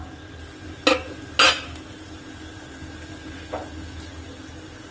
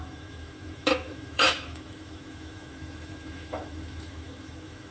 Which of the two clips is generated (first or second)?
second